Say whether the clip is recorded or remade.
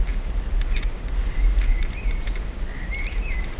recorded